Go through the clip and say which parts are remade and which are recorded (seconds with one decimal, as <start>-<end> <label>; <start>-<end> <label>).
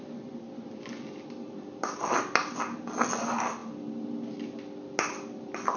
0.0-5.8 recorded